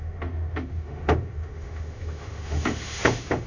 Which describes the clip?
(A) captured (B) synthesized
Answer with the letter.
B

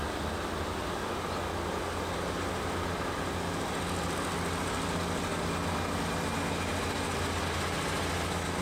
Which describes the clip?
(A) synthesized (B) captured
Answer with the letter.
B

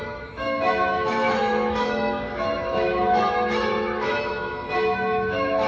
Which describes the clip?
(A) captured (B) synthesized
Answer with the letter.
B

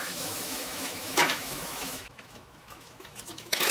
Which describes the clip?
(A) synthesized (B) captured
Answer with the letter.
A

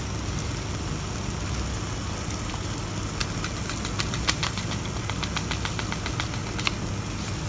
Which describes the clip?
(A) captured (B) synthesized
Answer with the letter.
A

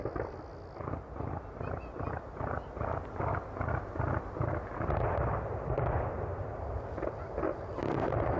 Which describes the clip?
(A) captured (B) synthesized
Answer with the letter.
A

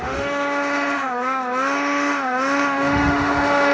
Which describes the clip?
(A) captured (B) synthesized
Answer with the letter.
B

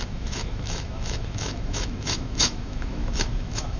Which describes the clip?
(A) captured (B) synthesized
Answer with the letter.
B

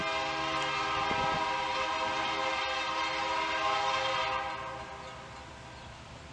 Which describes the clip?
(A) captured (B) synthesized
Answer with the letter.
A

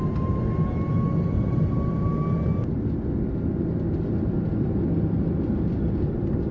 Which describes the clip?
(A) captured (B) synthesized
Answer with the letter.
A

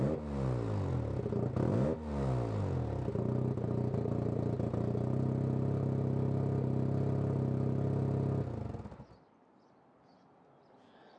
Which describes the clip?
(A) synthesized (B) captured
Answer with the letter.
B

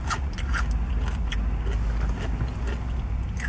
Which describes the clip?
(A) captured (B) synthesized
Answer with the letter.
A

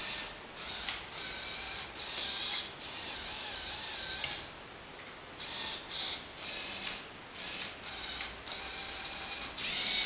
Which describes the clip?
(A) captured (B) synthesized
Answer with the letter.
A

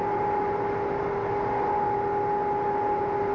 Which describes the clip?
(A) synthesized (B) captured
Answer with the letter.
B